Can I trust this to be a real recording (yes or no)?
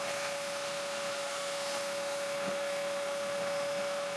no